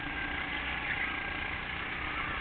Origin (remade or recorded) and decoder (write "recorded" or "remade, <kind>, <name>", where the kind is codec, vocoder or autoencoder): recorded